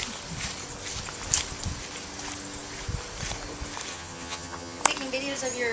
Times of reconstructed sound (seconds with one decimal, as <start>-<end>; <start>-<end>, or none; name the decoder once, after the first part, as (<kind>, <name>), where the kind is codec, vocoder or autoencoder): 3.9-4.8 (vocoder, HiFi-GAN)